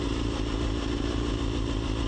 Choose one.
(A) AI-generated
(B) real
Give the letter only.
B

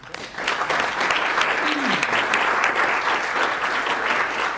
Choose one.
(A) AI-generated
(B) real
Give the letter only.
B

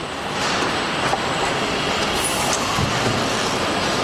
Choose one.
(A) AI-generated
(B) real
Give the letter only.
B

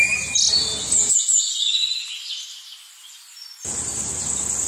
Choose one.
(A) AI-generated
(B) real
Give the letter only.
B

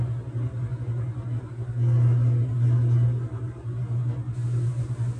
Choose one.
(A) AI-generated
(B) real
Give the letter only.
B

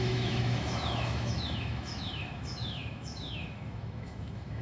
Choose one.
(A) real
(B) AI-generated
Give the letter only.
B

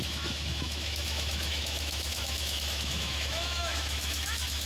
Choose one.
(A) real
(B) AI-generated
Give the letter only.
B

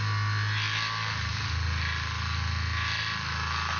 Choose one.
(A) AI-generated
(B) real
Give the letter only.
B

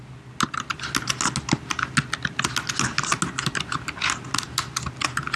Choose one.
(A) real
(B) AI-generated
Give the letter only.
A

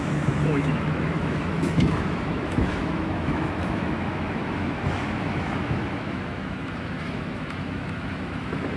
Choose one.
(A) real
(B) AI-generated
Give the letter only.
B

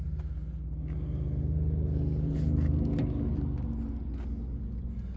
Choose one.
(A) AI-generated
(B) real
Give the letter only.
B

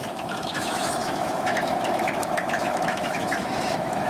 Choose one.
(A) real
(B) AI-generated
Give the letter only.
B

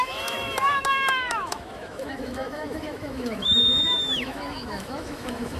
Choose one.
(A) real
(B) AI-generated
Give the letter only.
B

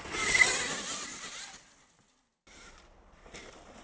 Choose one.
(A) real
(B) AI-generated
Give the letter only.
A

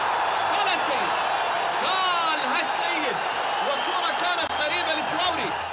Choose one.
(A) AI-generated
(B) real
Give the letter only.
B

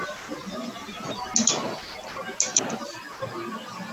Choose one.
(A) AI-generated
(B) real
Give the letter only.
B